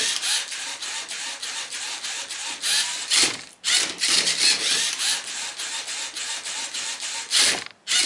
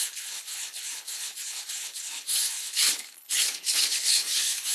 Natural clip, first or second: first